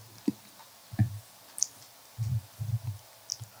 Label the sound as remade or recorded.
recorded